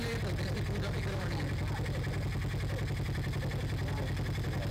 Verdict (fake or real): real